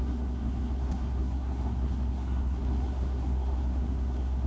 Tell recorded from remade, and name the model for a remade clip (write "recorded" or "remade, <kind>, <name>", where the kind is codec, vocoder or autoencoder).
remade, codec, SNAC